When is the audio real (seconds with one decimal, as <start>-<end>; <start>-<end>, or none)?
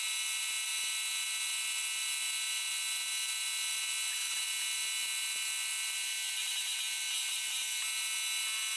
0.0-8.8